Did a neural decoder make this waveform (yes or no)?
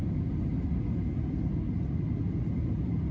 no